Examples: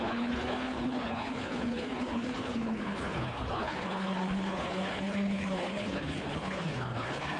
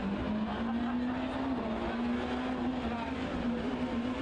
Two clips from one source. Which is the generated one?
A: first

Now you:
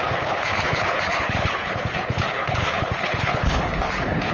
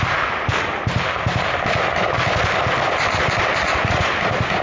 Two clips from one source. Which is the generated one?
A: first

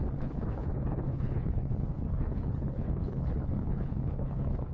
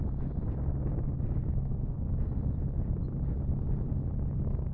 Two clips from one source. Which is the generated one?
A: first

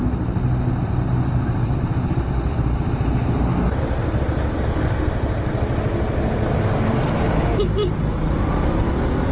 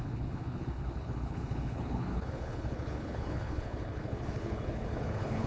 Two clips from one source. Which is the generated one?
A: second